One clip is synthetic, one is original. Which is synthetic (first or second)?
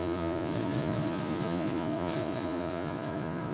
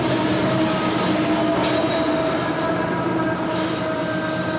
first